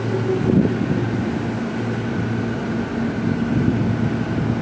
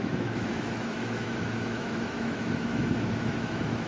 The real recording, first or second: first